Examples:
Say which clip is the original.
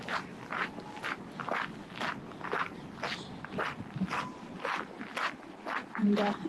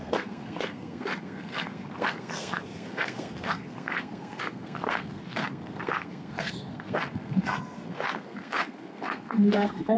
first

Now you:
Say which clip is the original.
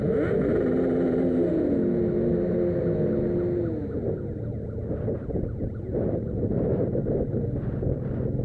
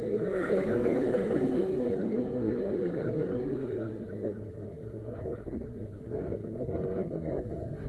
first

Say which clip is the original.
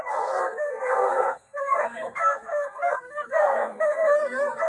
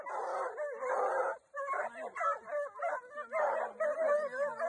second